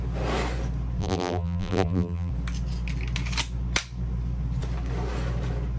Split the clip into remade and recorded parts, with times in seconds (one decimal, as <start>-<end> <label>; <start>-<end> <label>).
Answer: 0.0-1.0 recorded; 1.0-2.3 remade; 2.3-5.8 recorded